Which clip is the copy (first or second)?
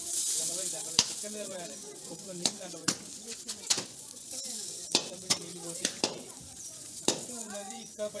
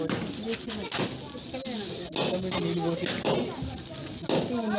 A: first